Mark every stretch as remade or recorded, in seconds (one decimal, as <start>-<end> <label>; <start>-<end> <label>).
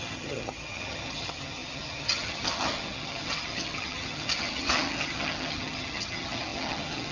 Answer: 0.0-7.1 remade